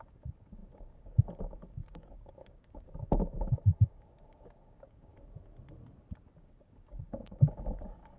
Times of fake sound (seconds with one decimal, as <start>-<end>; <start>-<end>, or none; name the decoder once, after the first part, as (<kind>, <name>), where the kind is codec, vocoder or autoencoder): 0.0-5.1 (codec, DAC); 6.4-8.2